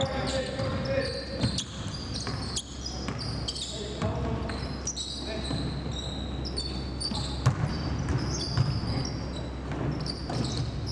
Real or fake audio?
real